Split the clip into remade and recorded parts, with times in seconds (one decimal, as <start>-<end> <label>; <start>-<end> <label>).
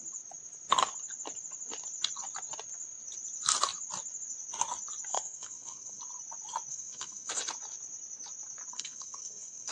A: 0.0-5.1 recorded; 5.1-6.0 remade; 6.0-6.7 recorded; 6.7-7.3 remade; 7.3-8.7 recorded; 8.7-9.7 remade